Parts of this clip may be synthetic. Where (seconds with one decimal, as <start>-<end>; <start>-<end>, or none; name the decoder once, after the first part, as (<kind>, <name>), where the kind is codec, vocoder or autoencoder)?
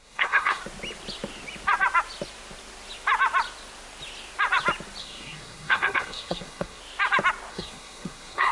0.0-0.6 (codec, SNAC); 5.0-6.8; 7.5-8.5